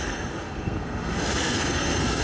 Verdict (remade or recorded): remade